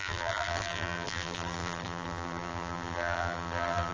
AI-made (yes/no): yes